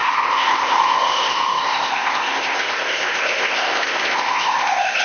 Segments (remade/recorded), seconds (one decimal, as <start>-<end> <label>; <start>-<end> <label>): 0.0-5.0 remade